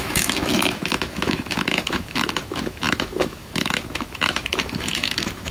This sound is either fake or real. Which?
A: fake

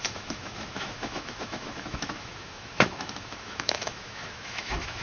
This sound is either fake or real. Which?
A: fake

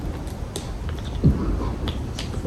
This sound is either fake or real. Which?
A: real